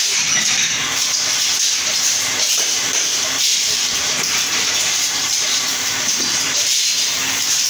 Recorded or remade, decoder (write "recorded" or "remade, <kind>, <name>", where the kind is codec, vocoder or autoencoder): remade, vocoder, BigVGAN v2